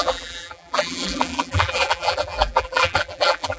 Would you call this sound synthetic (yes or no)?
yes